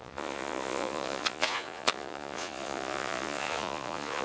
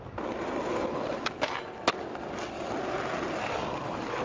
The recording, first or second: second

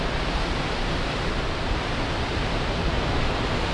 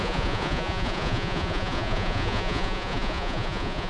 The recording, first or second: first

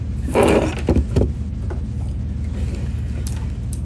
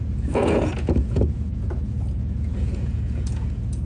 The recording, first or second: first